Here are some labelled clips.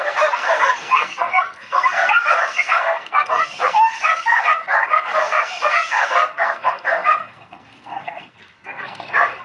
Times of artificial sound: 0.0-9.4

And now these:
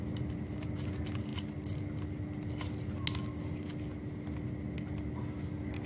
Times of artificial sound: none